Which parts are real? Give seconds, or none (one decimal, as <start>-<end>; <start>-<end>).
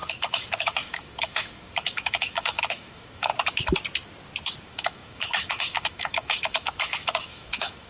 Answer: 3.3-4.6